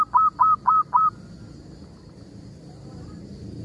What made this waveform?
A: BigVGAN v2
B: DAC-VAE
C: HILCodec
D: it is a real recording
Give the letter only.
D